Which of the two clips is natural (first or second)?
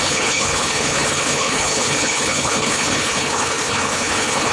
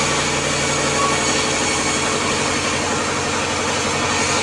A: second